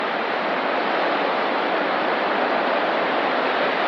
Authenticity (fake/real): fake